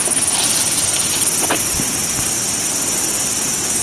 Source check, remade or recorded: recorded